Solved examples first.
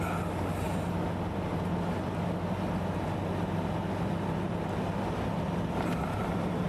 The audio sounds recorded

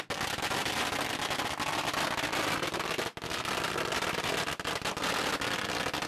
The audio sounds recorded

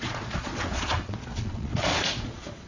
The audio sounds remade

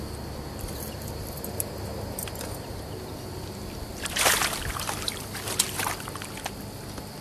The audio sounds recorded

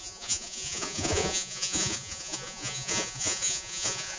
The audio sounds remade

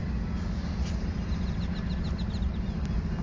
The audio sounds recorded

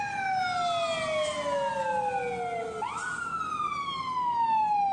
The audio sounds recorded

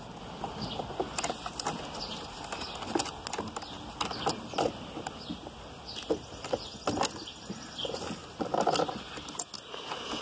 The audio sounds recorded